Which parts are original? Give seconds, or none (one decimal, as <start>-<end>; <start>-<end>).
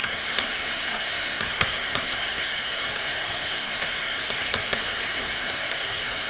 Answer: none